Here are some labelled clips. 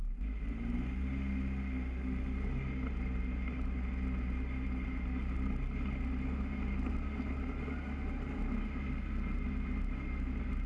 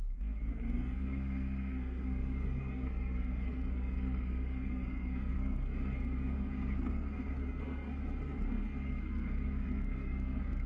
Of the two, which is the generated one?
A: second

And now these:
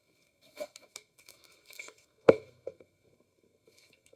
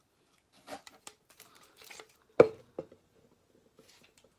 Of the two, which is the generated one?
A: first